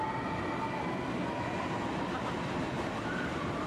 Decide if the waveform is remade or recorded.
recorded